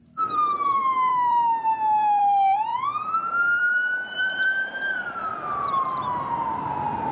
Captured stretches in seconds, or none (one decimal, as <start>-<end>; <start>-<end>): 5.3-6.2